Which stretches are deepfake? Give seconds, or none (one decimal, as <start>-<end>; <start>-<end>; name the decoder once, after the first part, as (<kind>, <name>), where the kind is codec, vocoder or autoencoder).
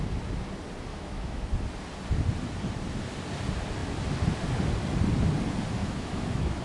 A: 0.9-1.5 (autoencoder, DAC-VAE); 5.8-6.6